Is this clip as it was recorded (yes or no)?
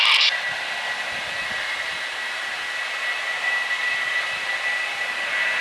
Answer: yes